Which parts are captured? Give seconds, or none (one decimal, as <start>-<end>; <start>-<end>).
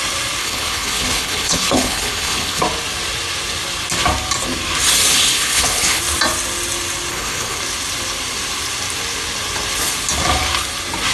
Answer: 0.0-0.4; 2.6-5.1; 6.0-7.1; 7.6-11.1